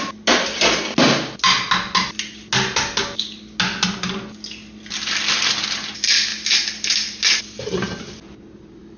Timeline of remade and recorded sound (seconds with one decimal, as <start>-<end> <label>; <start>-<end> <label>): 0.0-9.0 recorded